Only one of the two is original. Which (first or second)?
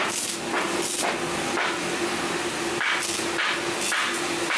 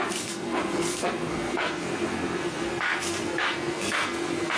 first